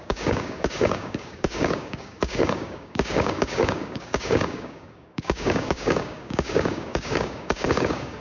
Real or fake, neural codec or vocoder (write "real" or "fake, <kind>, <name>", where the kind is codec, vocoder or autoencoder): fake, codec, DAC